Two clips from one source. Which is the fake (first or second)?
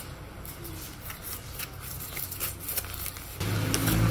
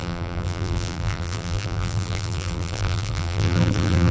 second